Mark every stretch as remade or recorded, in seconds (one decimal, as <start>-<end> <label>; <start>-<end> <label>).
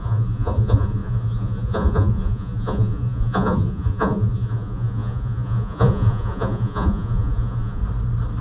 0.0-7.8 remade; 7.8-8.4 recorded